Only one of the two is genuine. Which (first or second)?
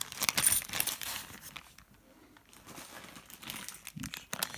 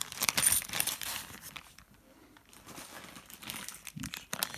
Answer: first